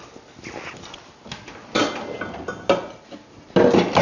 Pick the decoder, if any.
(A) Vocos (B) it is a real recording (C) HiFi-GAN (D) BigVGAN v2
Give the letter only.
B